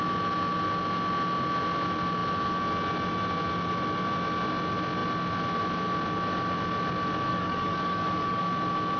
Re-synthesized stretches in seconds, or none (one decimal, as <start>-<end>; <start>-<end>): 7.3-8.4